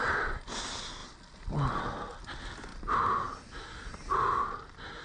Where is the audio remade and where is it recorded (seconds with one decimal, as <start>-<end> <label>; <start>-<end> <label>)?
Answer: 0.0-5.0 recorded